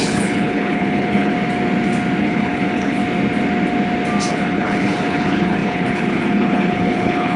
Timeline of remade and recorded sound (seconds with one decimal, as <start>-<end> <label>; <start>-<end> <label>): 0.0-1.3 remade; 1.3-2.2 recorded; 2.2-3.0 remade; 3.0-4.3 recorded; 4.3-7.4 remade